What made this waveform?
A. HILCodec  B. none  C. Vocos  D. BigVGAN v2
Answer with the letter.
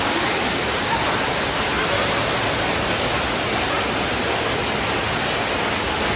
B